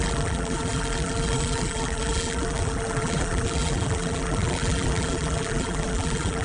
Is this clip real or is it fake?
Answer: fake